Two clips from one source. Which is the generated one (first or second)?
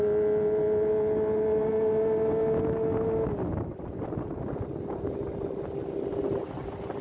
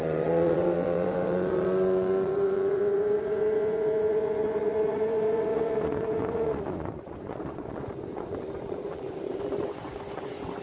second